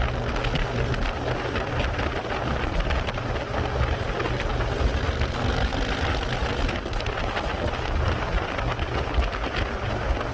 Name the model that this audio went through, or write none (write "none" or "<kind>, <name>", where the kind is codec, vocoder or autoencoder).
none